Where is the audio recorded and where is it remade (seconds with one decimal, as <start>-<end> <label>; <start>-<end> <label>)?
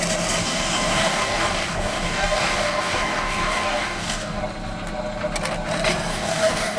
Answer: 0.0-0.4 recorded; 0.4-4.4 remade; 4.4-6.1 recorded; 6.1-6.8 remade